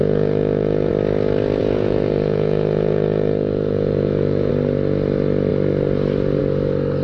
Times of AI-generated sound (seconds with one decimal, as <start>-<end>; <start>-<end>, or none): 0.0-0.9; 1.6-4.5